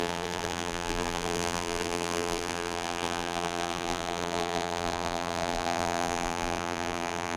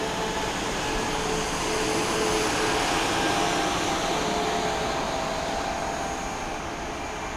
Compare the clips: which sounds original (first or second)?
second